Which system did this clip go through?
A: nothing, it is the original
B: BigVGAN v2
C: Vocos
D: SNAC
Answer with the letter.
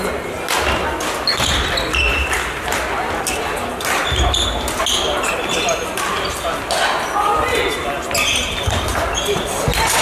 A